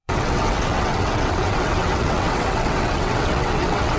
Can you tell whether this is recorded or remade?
remade